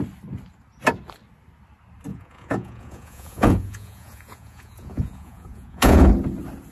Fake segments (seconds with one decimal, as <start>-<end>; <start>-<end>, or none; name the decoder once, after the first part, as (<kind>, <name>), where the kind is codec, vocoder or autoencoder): 2.1-6.1 (vocoder, Vocos)